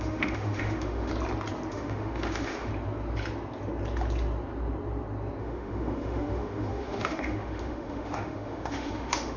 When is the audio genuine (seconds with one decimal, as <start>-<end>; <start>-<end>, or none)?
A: 1.1-1.7; 2.7-5.4